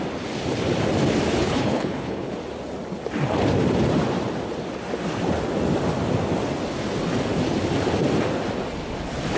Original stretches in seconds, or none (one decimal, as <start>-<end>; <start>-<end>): 0.0-1.4; 2.3-9.4